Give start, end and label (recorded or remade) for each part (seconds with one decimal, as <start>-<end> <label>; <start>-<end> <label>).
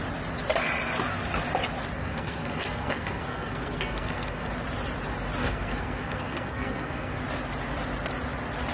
0.0-2.0 recorded; 2.0-4.5 remade; 4.5-5.4 recorded; 5.4-7.2 remade; 7.2-8.7 recorded